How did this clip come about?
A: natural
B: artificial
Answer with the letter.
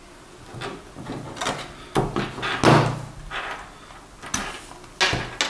A